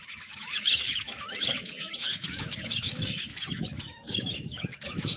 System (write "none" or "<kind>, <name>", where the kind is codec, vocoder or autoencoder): autoencoder, DAC-VAE